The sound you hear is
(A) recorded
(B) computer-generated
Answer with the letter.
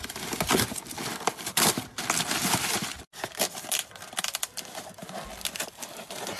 A